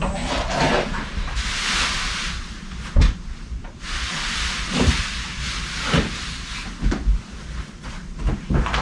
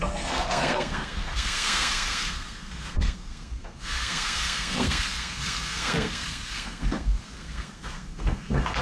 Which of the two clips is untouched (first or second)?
first